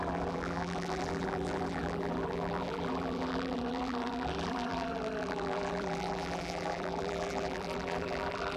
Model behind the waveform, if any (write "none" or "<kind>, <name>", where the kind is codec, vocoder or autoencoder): vocoder, BigVGAN v2